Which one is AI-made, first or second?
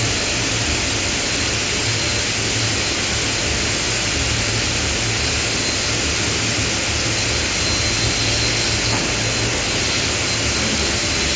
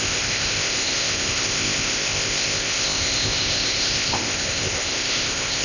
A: second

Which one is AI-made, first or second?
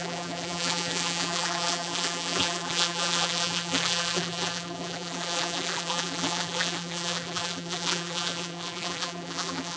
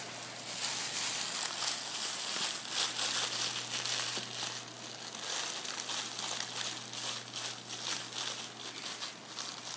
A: first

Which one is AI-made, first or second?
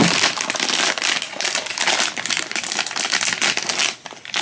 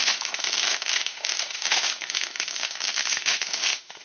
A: second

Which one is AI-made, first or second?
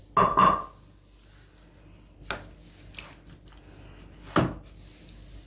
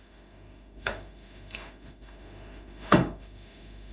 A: second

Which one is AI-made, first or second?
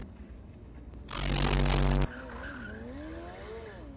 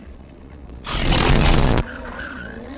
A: second